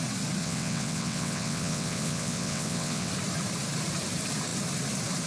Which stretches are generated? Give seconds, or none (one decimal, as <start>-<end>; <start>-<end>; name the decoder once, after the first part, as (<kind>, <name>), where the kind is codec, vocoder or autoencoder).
0.4-3.1 (vocoder, WaveNeXt)